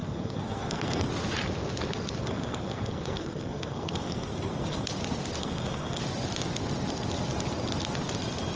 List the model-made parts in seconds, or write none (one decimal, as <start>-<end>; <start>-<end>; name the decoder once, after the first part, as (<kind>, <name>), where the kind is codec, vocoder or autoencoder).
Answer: 0.0-1.1 (codec, SNAC); 2.2-4.9; 5.4-6.0